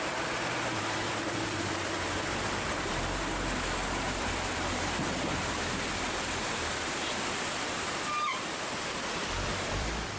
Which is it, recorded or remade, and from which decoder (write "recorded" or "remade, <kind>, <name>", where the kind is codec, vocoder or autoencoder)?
remade, vocoder, BigVGAN v2